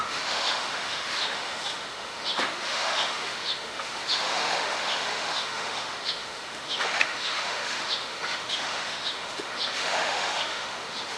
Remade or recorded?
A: remade